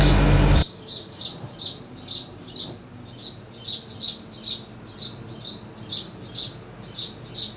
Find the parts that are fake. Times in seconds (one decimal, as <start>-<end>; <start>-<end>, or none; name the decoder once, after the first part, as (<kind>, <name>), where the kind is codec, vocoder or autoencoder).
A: 0.6-1.2 (codec, DAC)